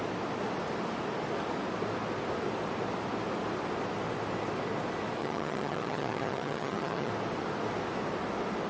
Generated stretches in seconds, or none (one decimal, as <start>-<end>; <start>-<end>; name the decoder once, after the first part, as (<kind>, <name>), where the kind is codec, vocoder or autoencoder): 5.2-7.1 (vocoder, HiFi-GAN)